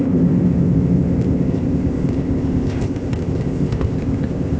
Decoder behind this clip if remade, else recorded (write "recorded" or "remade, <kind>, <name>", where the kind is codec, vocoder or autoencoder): remade, codec, ZipCodec